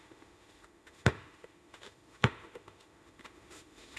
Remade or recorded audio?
remade